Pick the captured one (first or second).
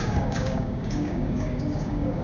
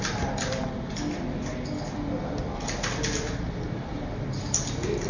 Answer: second